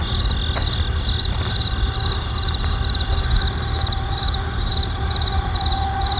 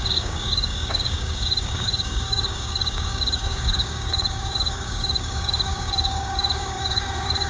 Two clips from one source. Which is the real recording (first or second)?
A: first